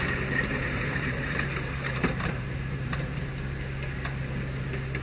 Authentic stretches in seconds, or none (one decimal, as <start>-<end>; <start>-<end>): 0.0-0.5; 3.3-5.0